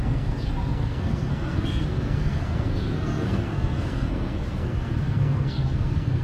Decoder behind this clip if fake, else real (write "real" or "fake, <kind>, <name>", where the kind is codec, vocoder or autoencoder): fake, codec, SNAC